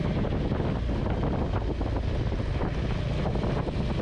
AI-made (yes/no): no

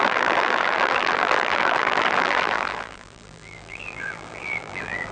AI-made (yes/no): yes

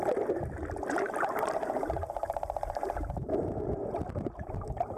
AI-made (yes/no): no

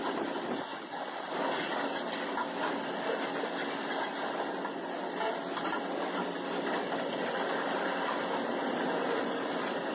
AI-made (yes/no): no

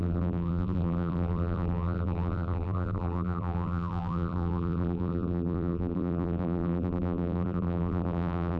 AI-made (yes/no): yes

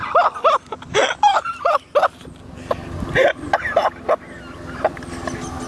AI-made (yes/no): no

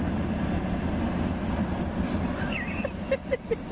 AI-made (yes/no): no